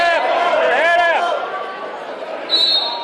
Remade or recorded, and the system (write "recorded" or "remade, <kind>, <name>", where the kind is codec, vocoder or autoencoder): remade, vocoder, BigVGAN v2